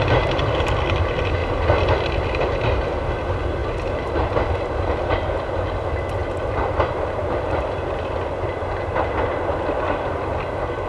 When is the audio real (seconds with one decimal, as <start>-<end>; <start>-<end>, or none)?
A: 0.0-10.9